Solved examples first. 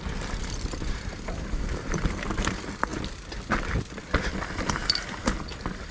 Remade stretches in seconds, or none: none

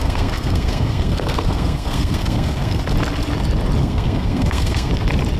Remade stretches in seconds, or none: 0.0-2.8 (codec, SNAC); 3.8-4.9

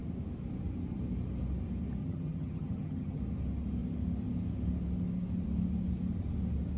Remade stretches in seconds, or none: 2.0-3.2 (vocoder, HiFi-GAN)

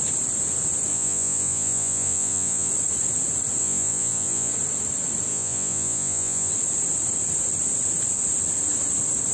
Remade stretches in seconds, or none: 0.9-2.7 (vocoder, Vocos); 3.6-4.5; 5.3-6.5

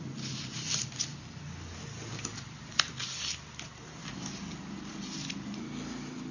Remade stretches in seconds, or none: none

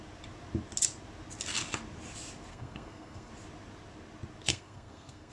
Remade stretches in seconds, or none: 2.5-3.3 (codec, SNAC); 4.5-5.3

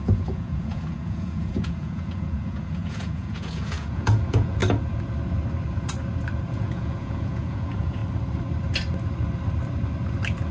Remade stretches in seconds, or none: 0.0-4.6 (vocoder, Vocos); 6.5-8.0

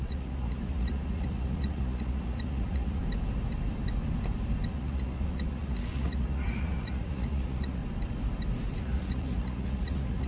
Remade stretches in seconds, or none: 0.0-3.0 (vocoder, Vocos); 4.7-7.8; 8.8-10.3